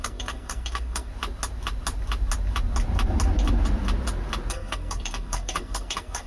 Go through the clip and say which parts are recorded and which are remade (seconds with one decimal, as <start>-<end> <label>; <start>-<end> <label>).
0.0-1.1 remade; 1.1-4.5 recorded; 4.5-6.3 remade